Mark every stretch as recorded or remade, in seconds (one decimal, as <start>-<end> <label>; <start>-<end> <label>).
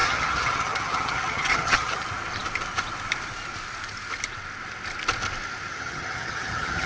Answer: 0.0-2.0 remade; 2.0-5.7 recorded; 5.7-6.9 remade